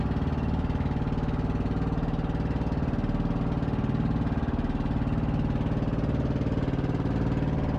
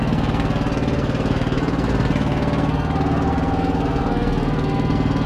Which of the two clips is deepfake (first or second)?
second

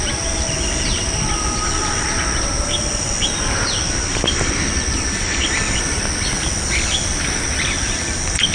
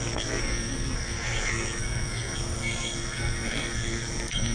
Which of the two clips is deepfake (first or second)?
second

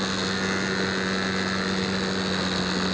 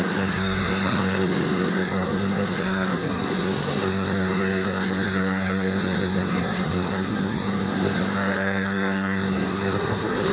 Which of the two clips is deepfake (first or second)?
second